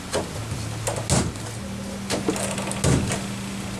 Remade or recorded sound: recorded